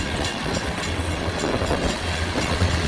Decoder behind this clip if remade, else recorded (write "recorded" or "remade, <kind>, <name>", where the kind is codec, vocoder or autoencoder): remade, vocoder, WaveNeXt